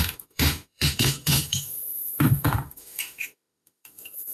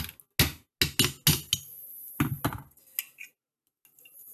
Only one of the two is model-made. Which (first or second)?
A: first